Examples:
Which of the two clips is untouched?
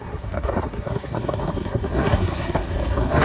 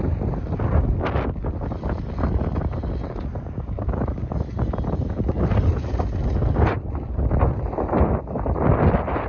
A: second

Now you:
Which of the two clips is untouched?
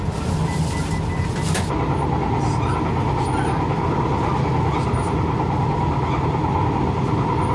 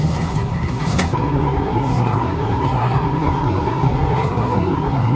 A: first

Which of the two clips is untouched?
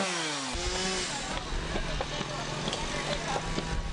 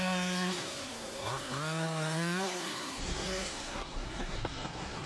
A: first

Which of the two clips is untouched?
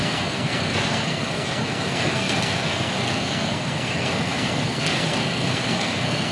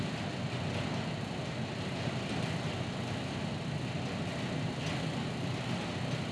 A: second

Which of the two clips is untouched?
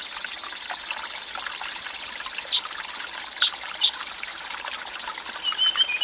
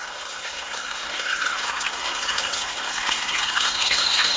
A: first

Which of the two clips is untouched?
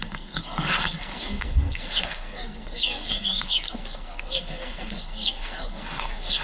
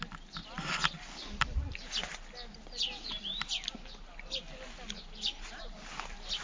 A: second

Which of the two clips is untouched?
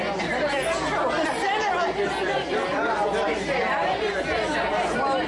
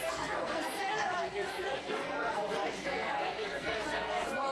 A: first